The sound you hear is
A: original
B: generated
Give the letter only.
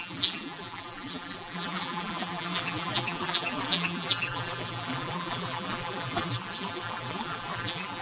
B